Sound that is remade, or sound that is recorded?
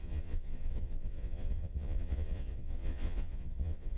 remade